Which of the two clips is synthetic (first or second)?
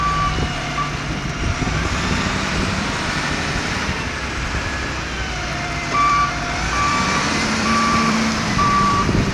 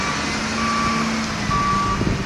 first